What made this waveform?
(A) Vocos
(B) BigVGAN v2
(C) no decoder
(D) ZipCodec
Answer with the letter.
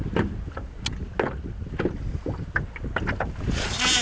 C